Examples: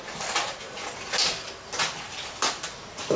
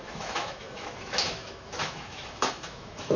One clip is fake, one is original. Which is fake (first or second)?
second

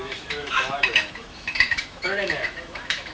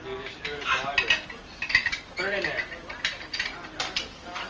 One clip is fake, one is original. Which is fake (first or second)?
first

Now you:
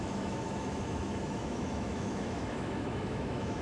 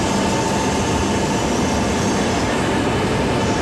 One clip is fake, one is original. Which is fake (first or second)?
first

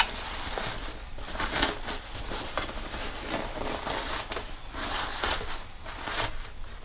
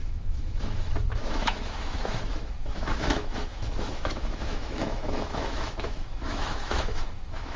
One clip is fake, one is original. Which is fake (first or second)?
second